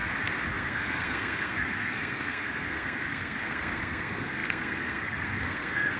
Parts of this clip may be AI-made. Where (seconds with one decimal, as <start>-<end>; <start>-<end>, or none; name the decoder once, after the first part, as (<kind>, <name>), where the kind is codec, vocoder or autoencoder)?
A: 0.5-6.0 (codec, SNAC)

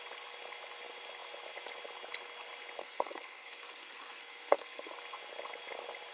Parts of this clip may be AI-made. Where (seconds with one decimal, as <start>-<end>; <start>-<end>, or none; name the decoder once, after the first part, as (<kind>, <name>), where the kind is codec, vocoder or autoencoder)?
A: 2.8-4.9 (codec, SNAC)

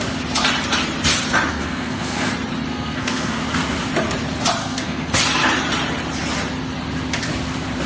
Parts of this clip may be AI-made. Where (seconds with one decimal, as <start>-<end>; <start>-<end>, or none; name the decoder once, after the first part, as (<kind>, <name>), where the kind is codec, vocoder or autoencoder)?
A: 1.5-2.3 (codec, SNAC); 2.7-3.4; 4.6-5.1

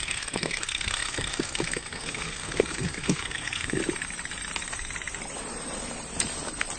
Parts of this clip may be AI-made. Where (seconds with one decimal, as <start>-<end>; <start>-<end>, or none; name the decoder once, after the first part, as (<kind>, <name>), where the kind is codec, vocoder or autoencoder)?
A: 0.0-3.8 (codec, SNAC)

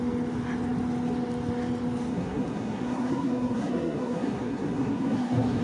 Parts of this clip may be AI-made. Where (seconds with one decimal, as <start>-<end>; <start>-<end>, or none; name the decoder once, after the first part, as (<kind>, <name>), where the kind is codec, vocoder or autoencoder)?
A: 2.1-5.6 (codec, SNAC)

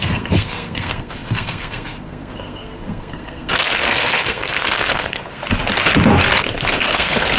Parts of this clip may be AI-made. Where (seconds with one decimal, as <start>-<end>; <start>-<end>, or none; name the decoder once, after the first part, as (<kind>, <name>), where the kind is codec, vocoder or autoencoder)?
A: 0.0-5.4 (codec, SNAC); 6.4-7.4

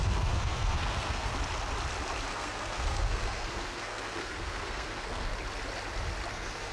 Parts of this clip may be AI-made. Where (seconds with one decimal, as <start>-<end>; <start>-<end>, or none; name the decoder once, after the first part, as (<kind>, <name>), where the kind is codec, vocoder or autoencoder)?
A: 0.0-1.3 (codec, SNAC); 2.3-5.3; 6.3-6.7

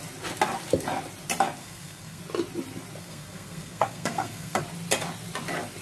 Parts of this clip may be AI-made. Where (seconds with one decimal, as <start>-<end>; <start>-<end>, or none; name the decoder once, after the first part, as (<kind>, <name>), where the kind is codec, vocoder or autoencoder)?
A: 1.6-2.2 (codec, SNAC); 3.0-4.6